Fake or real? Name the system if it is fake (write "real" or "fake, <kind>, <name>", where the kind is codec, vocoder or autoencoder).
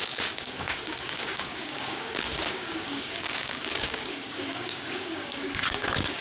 fake, codec, DAC